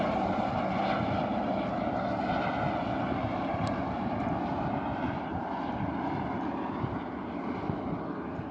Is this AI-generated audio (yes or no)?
no